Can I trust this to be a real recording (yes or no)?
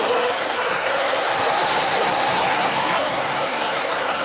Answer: no